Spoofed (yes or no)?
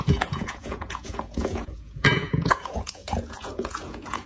yes